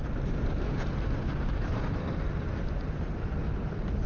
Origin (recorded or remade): recorded